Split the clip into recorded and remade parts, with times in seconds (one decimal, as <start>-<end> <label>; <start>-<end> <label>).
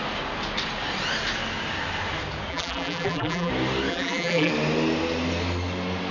0.0-2.5 recorded; 2.5-3.5 remade; 3.5-3.9 recorded; 3.9-4.5 remade; 4.5-6.1 recorded